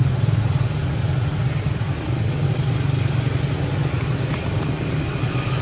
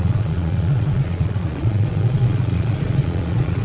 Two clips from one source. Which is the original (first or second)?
first